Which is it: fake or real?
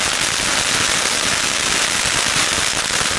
real